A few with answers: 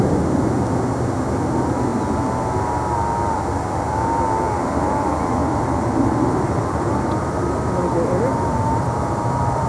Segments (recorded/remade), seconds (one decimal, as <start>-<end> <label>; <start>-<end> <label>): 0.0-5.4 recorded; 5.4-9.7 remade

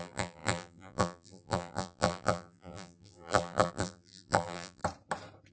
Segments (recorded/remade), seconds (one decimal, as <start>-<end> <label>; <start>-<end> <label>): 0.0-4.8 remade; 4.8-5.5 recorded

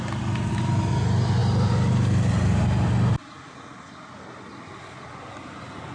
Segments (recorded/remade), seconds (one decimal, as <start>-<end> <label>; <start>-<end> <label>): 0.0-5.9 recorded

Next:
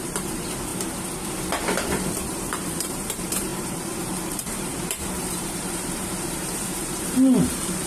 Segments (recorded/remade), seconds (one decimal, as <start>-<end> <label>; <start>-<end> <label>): 0.0-0.7 remade; 0.7-1.9 recorded; 1.9-7.9 remade

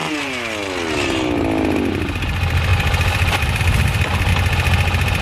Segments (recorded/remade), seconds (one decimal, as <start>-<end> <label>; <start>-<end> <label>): 0.0-1.9 recorded; 1.9-4.3 remade; 4.3-5.2 recorded

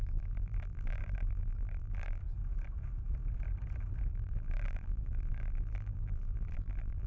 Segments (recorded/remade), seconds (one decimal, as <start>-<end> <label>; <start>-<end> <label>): 0.0-2.2 remade; 2.2-4.1 recorded; 4.1-7.1 remade

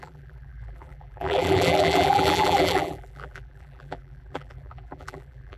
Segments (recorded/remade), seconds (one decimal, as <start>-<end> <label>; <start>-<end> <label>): 0.0-5.6 remade

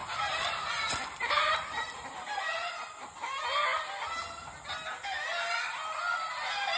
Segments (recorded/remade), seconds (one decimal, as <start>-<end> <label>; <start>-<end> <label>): 0.0-3.1 remade; 3.1-6.8 recorded